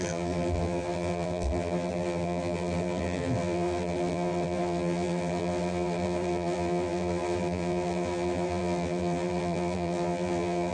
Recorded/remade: remade